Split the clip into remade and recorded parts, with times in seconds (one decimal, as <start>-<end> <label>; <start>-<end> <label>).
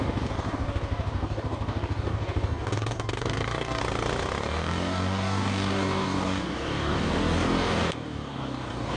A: 0.0-3.8 remade; 3.8-4.4 recorded; 4.4-9.0 remade